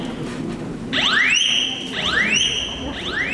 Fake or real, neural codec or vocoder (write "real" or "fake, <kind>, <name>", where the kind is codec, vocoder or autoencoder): real